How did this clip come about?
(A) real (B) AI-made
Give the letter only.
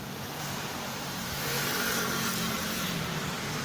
B